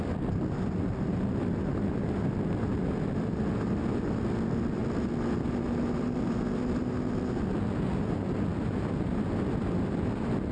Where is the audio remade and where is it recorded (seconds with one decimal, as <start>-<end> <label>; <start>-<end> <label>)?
0.0-10.5 recorded

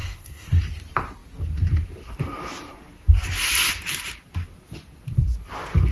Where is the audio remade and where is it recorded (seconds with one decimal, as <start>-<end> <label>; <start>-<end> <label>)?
0.0-0.6 remade; 0.6-5.9 recorded

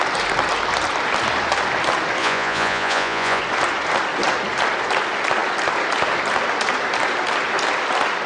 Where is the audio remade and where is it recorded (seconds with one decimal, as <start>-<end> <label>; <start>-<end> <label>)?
0.0-2.2 recorded; 2.2-3.4 remade; 3.4-8.3 recorded

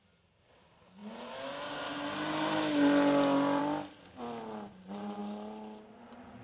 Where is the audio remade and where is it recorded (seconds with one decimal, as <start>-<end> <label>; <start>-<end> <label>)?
0.0-6.4 recorded

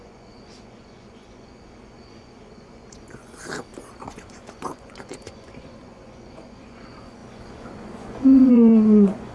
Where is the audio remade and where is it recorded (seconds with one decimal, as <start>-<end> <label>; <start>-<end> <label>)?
0.0-3.4 remade; 3.4-4.0 recorded; 4.0-9.3 remade

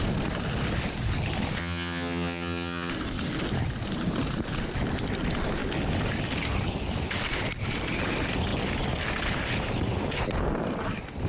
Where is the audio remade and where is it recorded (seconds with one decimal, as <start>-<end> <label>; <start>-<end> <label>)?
0.0-1.6 recorded; 1.6-2.9 remade; 2.9-11.3 recorded

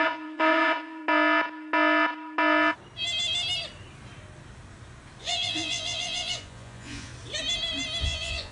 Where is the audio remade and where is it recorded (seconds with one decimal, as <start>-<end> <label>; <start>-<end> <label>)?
0.0-1.0 remade; 1.0-5.2 recorded; 5.2-7.1 remade; 7.1-8.0 recorded; 8.0-8.5 remade